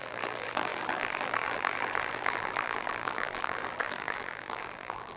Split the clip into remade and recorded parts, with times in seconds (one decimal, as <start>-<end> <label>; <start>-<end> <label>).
0.0-5.2 remade